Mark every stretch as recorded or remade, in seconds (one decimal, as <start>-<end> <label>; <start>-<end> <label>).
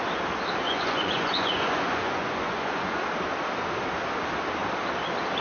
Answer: 0.0-0.6 recorded; 0.6-3.0 remade; 3.0-5.4 recorded